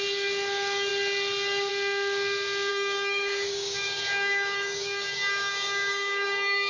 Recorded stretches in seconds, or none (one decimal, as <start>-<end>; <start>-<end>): 0.0-2.7